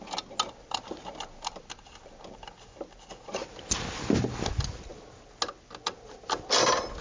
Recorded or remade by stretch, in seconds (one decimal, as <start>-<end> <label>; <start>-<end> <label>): 0.0-7.0 recorded